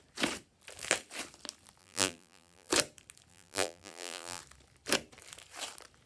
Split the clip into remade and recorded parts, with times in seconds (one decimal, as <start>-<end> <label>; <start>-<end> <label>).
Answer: 0.0-1.8 recorded; 1.8-2.7 remade; 2.7-3.3 recorded; 3.3-4.4 remade; 4.4-6.1 recorded